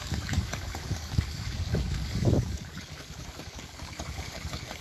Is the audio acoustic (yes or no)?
no